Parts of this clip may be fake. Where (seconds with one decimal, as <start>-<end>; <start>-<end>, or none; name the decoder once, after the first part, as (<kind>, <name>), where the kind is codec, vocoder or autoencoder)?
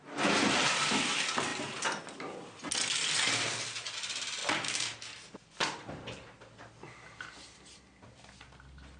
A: none